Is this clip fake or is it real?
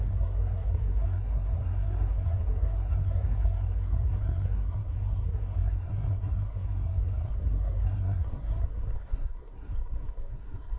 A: fake